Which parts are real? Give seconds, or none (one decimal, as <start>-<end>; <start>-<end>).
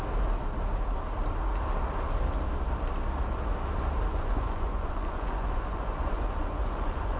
0.0-4.1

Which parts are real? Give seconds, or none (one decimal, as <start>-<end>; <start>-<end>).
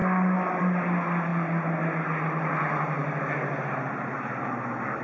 0.0-5.0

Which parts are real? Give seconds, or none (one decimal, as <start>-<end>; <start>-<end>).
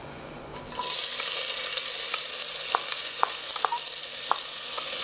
0.5-2.9; 3.5-4.4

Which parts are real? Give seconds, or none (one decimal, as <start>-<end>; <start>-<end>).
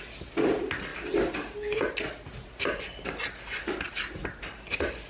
0.0-5.1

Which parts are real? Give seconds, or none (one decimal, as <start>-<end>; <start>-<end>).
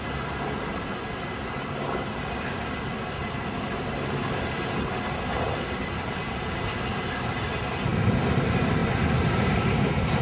0.0-10.2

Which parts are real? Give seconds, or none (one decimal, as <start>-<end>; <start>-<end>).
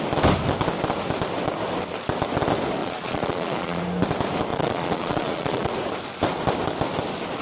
0.0-2.8; 3.8-4.5; 5.7-7.4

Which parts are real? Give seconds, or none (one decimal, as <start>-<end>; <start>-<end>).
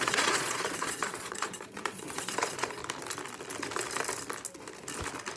2.8-5.4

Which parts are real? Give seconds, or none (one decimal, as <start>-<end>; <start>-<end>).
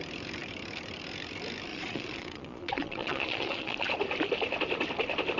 0.0-1.7; 3.9-5.4